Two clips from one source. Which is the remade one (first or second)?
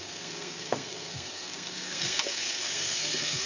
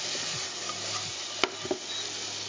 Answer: first